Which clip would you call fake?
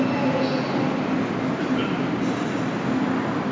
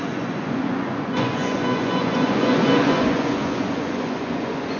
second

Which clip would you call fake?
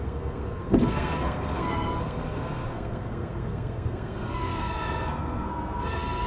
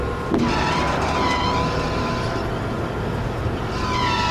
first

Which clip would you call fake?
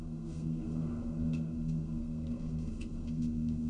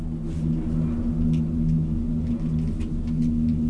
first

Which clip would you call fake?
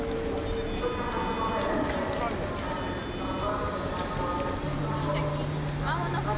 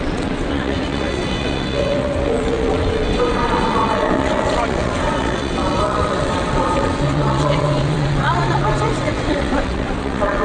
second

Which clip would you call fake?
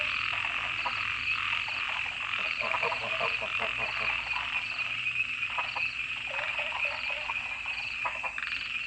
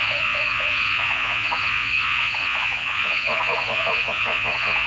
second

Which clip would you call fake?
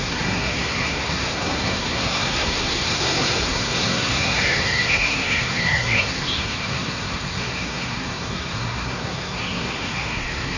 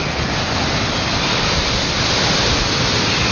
first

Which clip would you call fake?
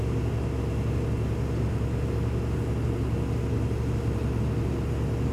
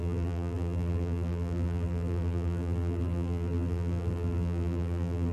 second